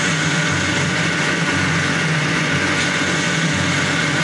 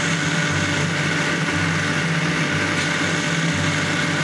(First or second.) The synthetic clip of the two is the first